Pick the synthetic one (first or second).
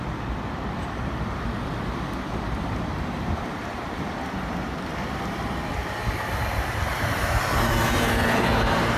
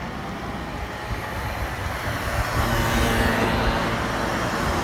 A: first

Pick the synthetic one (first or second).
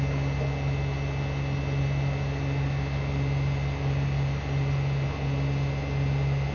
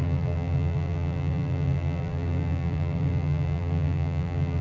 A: second